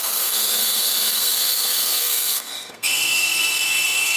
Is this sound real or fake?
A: fake